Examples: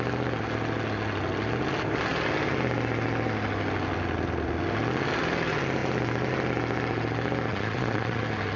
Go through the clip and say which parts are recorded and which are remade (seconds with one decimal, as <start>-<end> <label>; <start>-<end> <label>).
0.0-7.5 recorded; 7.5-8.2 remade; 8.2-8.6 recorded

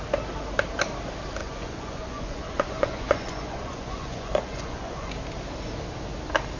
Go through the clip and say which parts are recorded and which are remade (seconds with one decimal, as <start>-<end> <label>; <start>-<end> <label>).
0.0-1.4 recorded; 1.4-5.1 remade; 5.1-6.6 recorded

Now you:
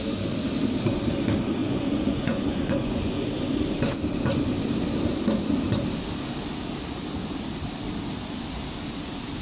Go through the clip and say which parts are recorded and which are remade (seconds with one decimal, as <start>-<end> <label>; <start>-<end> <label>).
0.0-1.6 recorded; 1.6-3.1 remade; 3.1-9.4 recorded